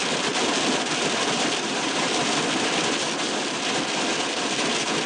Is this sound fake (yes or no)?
yes